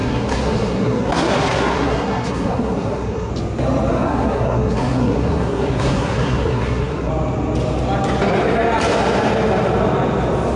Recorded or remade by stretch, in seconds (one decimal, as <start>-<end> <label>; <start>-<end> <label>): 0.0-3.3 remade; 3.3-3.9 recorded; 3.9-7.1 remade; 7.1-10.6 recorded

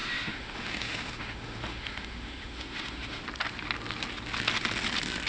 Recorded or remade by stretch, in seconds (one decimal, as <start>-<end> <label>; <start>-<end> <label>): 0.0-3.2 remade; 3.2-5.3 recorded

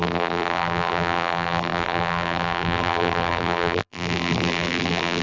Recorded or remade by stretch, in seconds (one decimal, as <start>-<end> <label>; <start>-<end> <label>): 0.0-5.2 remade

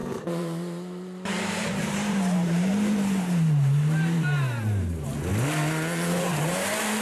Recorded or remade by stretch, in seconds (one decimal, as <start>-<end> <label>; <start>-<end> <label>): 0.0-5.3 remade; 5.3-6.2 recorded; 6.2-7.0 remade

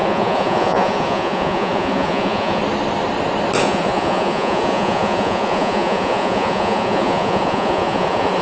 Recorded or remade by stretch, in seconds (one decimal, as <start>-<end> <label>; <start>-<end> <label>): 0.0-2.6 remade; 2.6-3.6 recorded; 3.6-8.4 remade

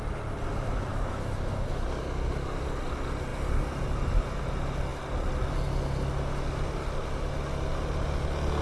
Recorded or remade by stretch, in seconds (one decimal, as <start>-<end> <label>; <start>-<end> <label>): 0.0-0.9 recorded; 0.9-1.8 remade; 1.8-8.6 recorded